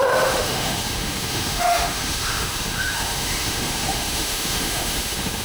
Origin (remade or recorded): remade